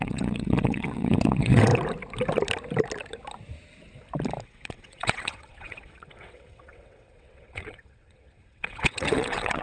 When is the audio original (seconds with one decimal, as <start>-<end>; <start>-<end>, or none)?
1.7-4.4